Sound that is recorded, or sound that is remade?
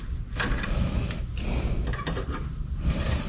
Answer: recorded